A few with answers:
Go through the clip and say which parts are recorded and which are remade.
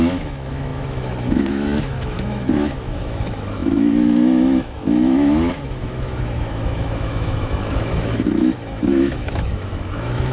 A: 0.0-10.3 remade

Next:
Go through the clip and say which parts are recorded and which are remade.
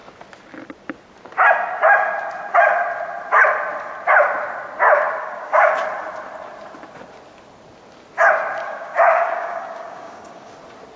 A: 0.0-5.2 recorded; 5.2-5.7 remade; 5.7-8.6 recorded; 8.6-10.5 remade; 10.5-11.0 recorded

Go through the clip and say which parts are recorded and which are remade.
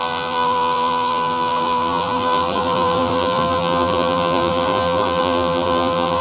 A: 0.0-6.2 remade